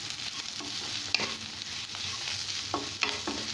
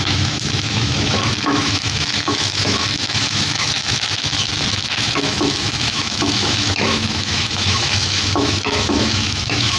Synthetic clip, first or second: second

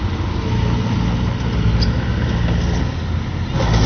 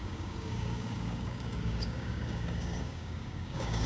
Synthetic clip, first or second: second